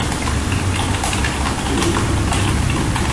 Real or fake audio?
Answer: real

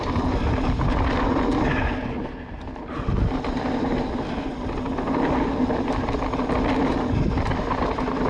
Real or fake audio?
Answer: real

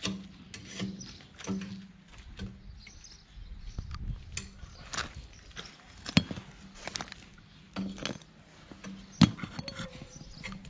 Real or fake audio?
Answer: real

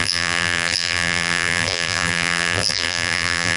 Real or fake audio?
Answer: fake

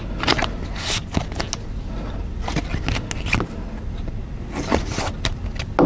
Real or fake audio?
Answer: real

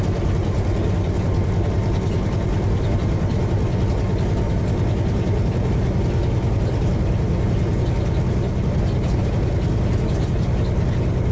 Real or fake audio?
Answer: real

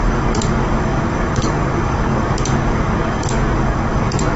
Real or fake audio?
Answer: fake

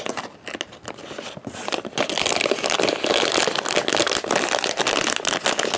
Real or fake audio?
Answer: real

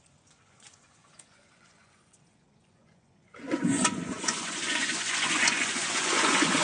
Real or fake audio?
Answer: fake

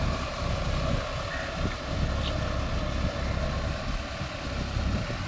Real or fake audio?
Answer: real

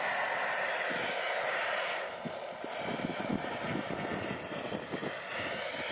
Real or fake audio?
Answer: real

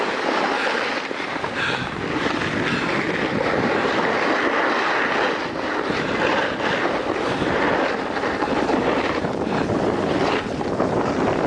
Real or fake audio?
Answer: real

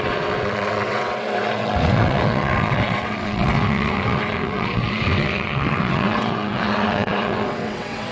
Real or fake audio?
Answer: fake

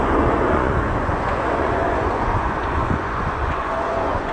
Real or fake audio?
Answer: fake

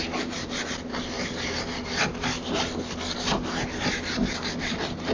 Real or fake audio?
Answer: real